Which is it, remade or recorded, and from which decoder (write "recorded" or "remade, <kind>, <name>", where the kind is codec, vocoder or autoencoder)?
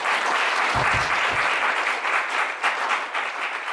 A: recorded